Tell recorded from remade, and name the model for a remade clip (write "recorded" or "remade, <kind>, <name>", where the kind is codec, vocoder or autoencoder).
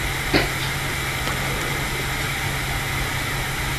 recorded